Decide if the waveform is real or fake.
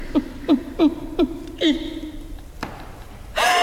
fake